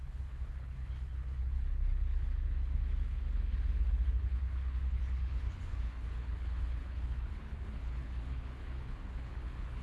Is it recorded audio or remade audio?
remade